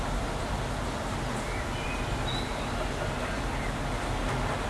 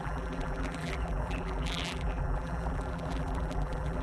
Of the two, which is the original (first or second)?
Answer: first